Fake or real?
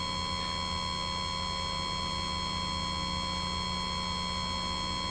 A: real